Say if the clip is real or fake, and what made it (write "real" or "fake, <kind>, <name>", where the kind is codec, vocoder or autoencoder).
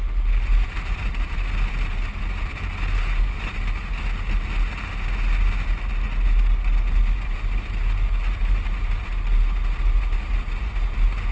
real